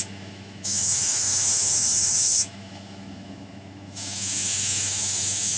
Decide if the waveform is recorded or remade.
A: remade